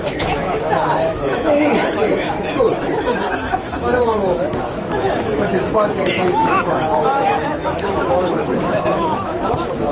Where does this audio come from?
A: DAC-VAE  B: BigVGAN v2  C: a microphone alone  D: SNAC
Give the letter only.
A